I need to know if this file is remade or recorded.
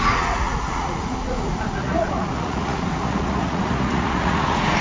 remade